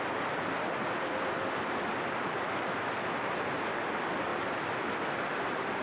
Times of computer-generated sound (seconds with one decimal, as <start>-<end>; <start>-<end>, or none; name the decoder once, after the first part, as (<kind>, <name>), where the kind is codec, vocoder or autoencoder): 4.3-5.8 (vocoder, BigVGAN v2)